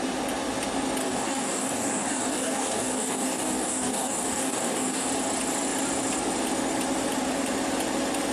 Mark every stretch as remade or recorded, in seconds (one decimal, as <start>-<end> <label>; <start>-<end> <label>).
0.0-1.0 recorded; 1.0-5.1 remade; 5.1-8.3 recorded